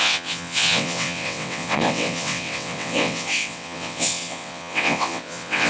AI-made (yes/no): yes